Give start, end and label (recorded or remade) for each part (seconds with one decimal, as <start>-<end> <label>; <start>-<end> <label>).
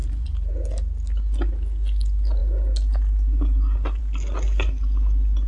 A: 0.0-0.5 remade; 0.5-5.5 recorded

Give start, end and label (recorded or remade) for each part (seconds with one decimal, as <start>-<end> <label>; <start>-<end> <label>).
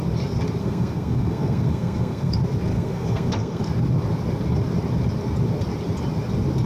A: 0.0-0.6 recorded; 0.6-2.3 remade; 2.3-2.7 recorded; 2.7-3.6 remade; 3.6-6.7 recorded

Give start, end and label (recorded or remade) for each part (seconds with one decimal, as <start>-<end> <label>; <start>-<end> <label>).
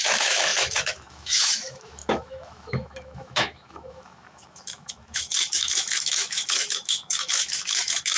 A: 0.0-8.2 remade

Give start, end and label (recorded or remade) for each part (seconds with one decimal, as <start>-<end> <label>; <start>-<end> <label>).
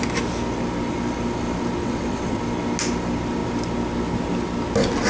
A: 0.0-1.8 recorded; 1.8-2.4 remade; 2.4-5.1 recorded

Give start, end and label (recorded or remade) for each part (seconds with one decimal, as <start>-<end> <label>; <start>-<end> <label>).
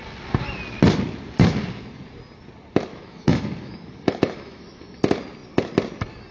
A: 0.0-2.9 recorded; 2.9-5.0 remade; 5.0-6.3 recorded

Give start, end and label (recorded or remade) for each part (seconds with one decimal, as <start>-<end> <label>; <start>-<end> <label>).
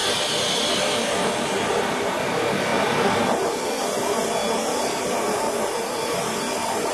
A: 0.0-1.7 recorded; 1.7-2.7 remade; 2.7-6.9 recorded